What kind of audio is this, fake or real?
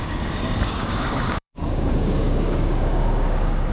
fake